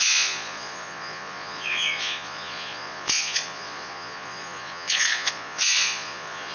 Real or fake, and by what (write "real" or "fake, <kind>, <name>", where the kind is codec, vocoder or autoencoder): fake, vocoder, Vocos